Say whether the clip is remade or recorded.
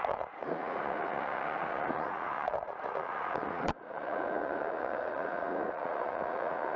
remade